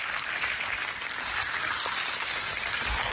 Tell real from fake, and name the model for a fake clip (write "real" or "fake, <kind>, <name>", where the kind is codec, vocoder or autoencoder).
fake, vocoder, BigVGAN v2